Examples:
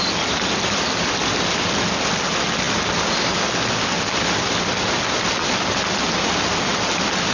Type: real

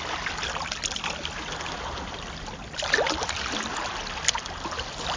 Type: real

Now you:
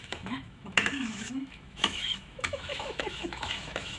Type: fake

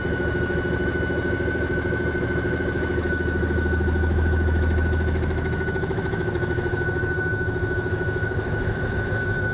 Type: fake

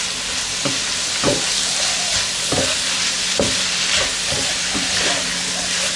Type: real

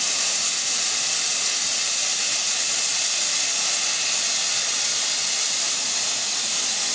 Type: real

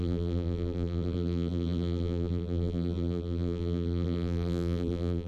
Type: fake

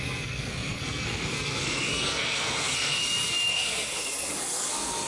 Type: fake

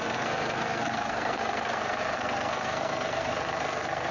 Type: fake